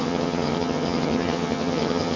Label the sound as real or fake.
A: fake